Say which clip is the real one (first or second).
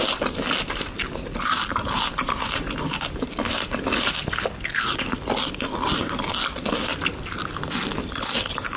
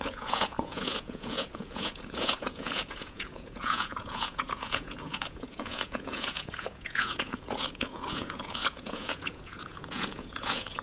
first